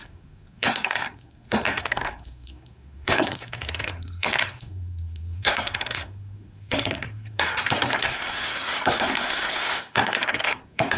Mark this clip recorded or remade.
remade